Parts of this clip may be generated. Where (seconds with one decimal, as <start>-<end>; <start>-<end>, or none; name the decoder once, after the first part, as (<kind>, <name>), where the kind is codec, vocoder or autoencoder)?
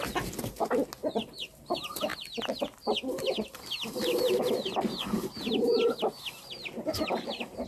1.0-1.5 (vocoder, BigVGAN v2)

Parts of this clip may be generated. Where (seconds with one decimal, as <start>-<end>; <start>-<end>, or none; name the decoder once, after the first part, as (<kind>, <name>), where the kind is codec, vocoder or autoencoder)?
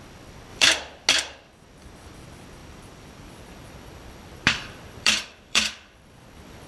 0.5-1.1 (vocoder, BigVGAN v2); 2.6-6.7